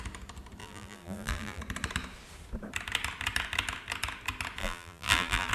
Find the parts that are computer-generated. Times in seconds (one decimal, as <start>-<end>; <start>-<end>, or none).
0.6-1.6; 4.6-5.5